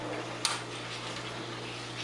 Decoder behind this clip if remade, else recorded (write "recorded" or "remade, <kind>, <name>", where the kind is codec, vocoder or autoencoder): recorded